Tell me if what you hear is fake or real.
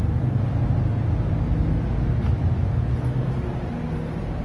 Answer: real